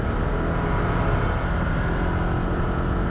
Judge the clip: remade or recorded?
recorded